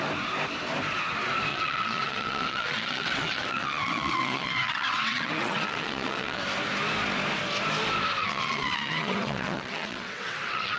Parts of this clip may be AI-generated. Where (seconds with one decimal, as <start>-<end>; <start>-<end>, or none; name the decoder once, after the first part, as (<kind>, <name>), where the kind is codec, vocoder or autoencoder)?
1.5-6.4 (vocoder, WaveNeXt); 8.2-10.8